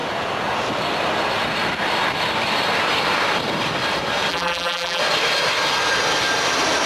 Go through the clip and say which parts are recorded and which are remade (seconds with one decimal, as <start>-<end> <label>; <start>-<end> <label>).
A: 0.0-4.3 recorded; 4.3-5.0 remade; 5.0-6.9 recorded

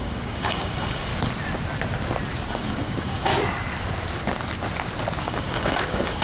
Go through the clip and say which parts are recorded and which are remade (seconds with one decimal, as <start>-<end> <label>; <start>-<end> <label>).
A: 0.0-1.1 remade; 1.1-2.5 recorded; 2.5-3.3 remade; 3.3-5.2 recorded; 5.2-6.2 remade